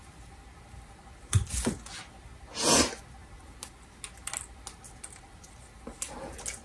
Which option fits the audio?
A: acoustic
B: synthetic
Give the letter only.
A